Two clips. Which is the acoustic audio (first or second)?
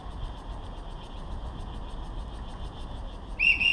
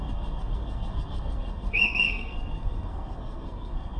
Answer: first